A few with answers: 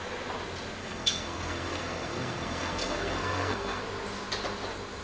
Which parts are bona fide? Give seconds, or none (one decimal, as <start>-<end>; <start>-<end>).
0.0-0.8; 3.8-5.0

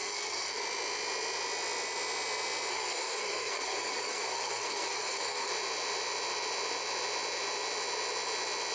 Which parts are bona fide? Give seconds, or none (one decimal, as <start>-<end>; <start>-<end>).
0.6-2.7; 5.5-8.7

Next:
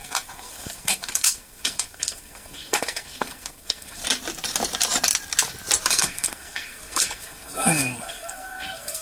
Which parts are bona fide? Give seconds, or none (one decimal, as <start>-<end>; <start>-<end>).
4.0-5.9

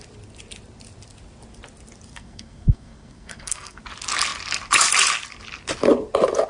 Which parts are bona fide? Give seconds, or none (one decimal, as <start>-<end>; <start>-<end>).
0.0-2.1; 3.8-6.5

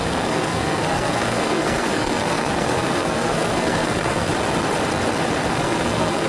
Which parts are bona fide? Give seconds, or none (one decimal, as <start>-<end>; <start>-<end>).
4.3-5.5

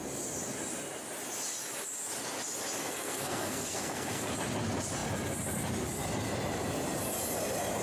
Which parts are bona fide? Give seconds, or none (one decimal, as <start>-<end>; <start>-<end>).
0.0-2.8; 4.3-7.8